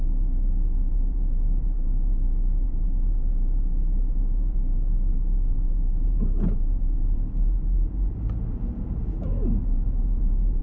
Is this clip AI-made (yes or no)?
yes